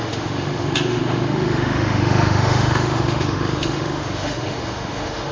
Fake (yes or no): yes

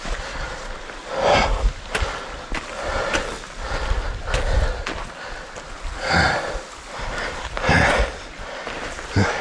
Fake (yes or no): no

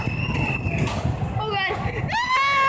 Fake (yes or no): no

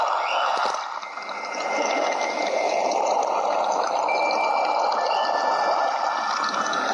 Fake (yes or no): no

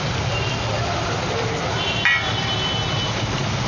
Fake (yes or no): no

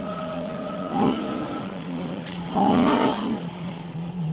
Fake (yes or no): yes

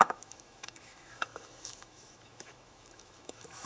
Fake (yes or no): yes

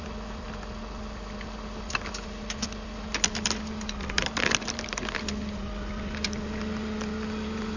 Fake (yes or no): no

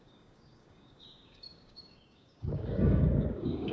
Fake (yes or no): yes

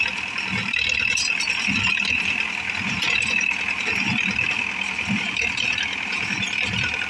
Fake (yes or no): yes